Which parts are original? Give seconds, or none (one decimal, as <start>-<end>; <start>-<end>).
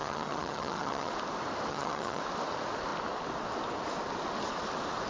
1.1-1.7; 2.2-5.1